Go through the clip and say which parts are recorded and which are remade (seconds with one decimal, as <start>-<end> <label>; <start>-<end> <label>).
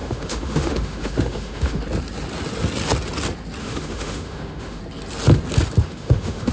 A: 0.0-1.8 remade; 1.8-3.6 recorded; 3.6-4.8 remade; 4.8-5.8 recorded; 5.8-6.5 remade